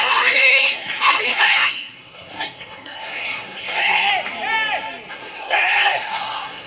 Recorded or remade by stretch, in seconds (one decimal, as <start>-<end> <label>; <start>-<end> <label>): 0.0-4.1 remade; 4.1-5.1 recorded; 5.1-6.7 remade